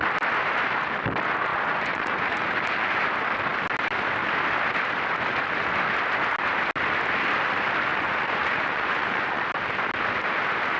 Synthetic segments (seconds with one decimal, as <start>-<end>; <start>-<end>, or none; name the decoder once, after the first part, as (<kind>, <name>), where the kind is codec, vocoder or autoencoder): 1.5-3.0 (vocoder, Vocos); 7.9-9.5